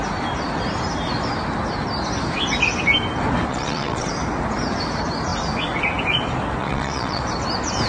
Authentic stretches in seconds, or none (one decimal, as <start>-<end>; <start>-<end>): 0.0-3.5; 4.1-6.6; 7.2-7.9